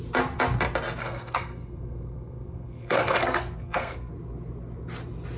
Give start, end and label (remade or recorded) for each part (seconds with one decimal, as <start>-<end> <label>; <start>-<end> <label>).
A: 0.0-1.0 recorded; 1.0-4.1 remade; 4.1-5.4 recorded